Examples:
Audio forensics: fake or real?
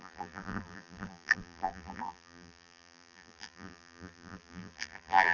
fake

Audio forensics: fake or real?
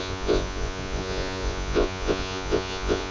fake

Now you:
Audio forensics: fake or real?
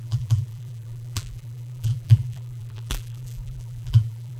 fake